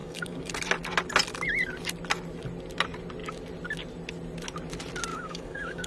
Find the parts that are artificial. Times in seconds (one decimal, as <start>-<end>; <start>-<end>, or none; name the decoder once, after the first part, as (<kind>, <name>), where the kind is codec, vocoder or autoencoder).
0.0-0.5 (codec, DAC); 5.1-5.9